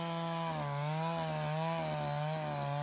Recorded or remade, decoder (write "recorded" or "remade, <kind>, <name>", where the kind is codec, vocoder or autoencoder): recorded